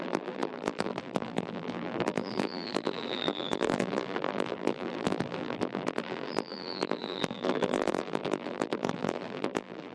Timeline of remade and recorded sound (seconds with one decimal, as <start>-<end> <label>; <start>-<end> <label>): 0.0-9.9 remade